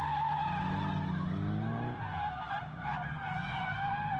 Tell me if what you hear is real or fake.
real